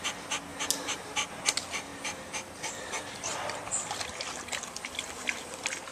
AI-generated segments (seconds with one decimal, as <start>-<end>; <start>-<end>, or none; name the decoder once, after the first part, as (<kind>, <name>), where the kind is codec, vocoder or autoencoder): 1.9-4.6 (vocoder, BigVGAN v2)